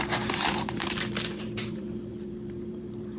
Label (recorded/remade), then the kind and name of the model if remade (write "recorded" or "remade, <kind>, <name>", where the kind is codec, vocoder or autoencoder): remade, vocoder, BigVGAN v2